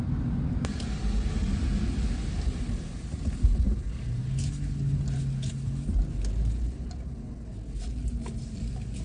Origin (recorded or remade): recorded